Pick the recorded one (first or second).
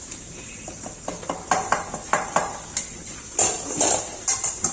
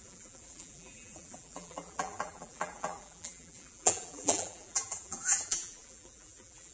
first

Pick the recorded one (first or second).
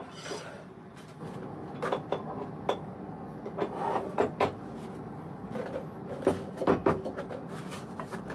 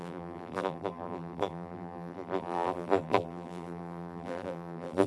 first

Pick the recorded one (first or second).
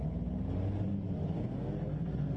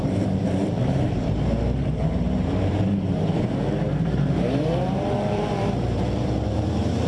first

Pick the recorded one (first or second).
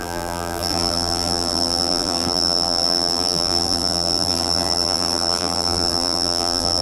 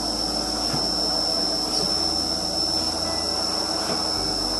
second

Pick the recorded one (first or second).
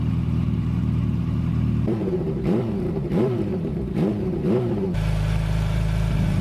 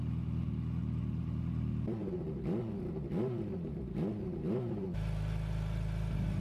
second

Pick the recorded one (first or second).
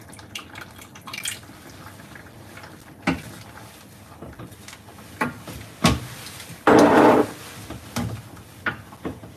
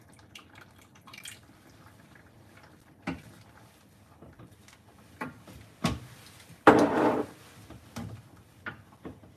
first